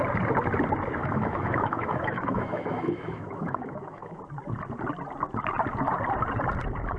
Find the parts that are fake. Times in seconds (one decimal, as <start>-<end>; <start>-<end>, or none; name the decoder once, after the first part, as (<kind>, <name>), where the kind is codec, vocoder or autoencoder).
1.0-4.2 (autoencoder, DAC-VAE)